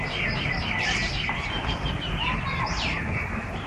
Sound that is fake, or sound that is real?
fake